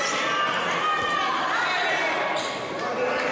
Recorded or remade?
recorded